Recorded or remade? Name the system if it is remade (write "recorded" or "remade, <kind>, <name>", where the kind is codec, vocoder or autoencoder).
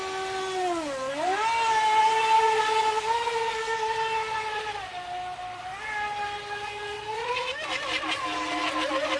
recorded